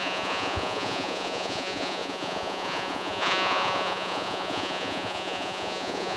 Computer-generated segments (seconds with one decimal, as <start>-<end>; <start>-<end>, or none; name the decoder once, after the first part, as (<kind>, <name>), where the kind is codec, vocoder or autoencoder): 0.0-6.2 (vocoder, Vocos)